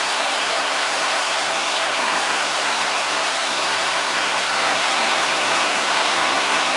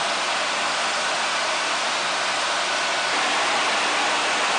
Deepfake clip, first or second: first